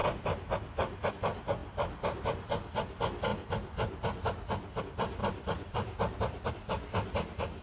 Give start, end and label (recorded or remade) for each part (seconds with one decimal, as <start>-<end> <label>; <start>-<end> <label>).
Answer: 0.0-5.2 recorded; 5.2-6.5 remade; 6.5-7.6 recorded